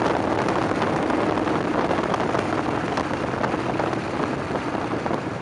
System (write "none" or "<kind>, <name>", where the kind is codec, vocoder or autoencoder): none